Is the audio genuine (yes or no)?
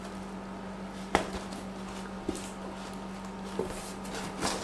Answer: yes